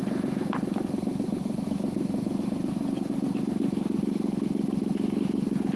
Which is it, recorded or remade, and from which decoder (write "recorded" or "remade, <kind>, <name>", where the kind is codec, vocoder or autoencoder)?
recorded